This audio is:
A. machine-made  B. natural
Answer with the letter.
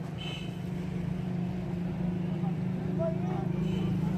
B